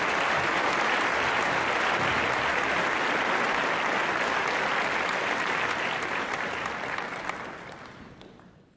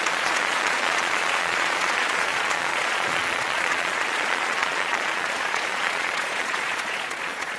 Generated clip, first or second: second